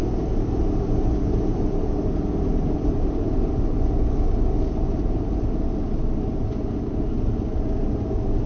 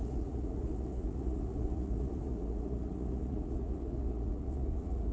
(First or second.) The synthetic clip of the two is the second